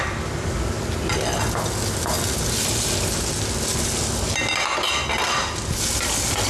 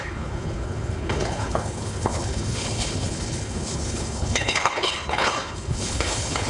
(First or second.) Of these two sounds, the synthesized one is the second